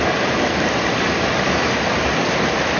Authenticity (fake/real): real